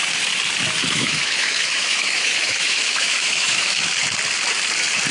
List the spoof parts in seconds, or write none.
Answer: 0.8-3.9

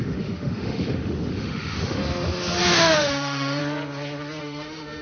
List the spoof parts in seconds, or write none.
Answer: 0.0-2.0; 2.6-3.6; 4.4-5.0

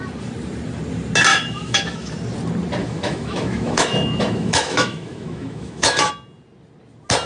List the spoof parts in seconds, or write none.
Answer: 1.3-2.1; 2.8-6.1

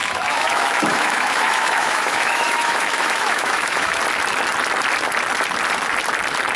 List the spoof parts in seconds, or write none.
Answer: 0.0-4.0